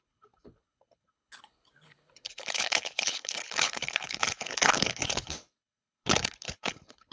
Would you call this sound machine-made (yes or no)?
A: yes